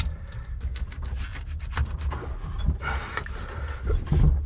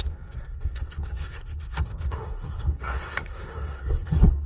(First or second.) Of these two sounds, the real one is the first